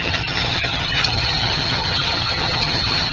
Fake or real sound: fake